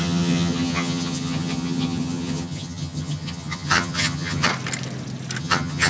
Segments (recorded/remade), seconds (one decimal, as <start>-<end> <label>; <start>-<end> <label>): 0.0-4.5 remade; 4.5-5.4 recorded; 5.4-5.9 remade